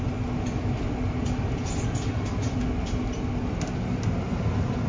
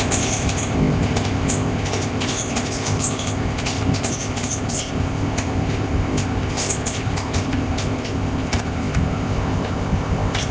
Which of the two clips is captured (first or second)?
first